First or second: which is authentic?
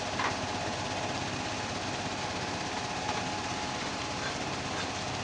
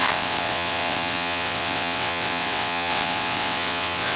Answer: first